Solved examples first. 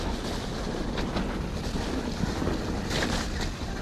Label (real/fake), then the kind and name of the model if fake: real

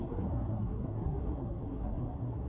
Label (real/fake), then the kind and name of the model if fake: fake, codec, SNAC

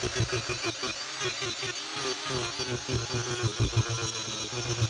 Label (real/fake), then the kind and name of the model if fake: real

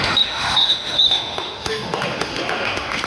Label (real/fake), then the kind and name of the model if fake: fake, autoencoder, DAC-VAE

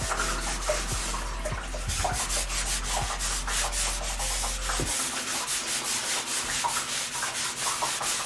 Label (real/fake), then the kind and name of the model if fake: real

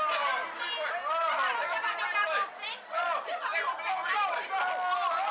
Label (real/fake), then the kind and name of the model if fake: real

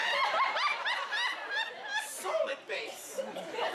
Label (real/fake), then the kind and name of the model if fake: fake, vocoder, BigVGAN v2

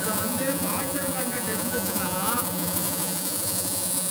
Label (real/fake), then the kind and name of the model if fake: fake, vocoder, Vocos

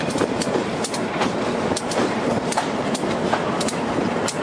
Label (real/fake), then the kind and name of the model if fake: fake, vocoder, BigVGAN v2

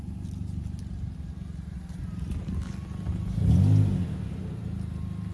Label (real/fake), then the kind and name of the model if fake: real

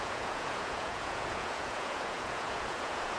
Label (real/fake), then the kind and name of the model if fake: fake, vocoder, Vocos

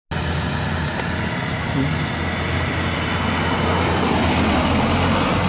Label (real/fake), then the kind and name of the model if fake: real